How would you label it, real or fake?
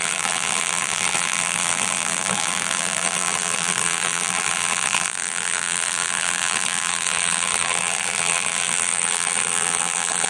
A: fake